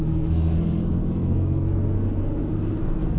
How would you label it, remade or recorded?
remade